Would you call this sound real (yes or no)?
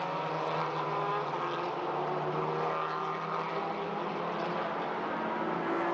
yes